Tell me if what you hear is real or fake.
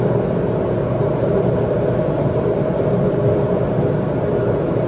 fake